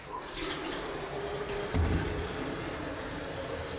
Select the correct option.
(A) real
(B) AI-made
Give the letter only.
A